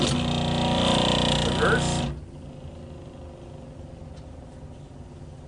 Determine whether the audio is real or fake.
real